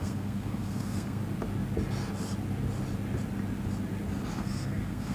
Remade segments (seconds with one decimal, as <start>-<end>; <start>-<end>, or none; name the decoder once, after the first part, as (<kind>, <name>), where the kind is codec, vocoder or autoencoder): 0.0-1.2 (codec, SNAC); 4.3-5.1